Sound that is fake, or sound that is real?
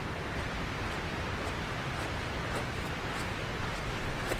real